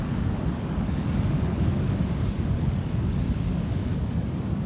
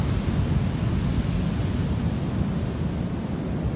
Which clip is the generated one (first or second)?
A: first